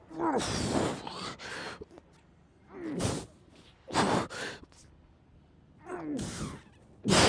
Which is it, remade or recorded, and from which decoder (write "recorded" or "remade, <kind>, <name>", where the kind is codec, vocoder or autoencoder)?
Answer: recorded